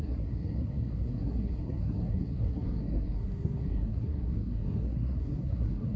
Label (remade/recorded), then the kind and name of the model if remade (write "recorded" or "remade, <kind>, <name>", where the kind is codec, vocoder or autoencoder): remade, codec, SNAC